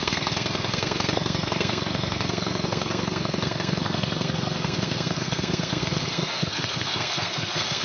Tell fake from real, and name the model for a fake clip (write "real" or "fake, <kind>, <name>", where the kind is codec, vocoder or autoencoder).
fake, codec, SNAC